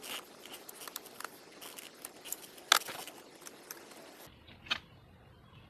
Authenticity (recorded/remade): recorded